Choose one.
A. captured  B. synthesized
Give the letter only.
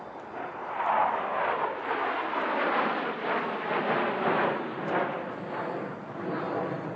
A